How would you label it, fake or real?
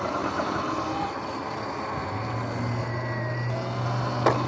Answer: real